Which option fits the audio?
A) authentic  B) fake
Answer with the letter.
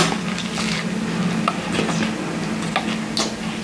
A